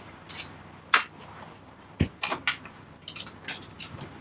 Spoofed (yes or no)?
yes